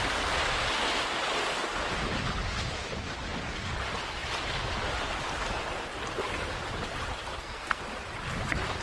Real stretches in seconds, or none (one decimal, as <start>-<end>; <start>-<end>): 0.0-7.3; 7.8-8.8